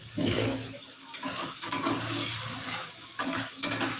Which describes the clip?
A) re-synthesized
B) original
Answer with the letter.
A